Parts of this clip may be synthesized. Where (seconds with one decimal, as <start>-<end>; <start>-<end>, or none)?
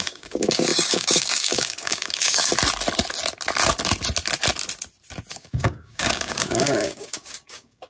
0.0-2.5; 5.3-7.9